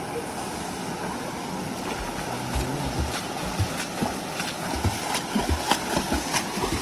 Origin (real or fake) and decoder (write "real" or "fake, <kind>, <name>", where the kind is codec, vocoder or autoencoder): real